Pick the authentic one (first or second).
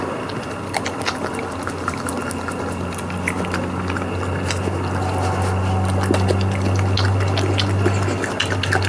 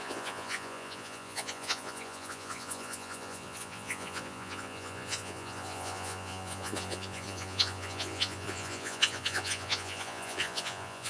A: first